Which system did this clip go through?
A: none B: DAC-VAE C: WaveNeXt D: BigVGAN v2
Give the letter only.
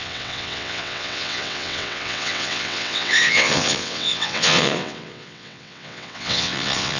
C